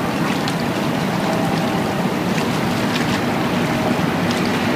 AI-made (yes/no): no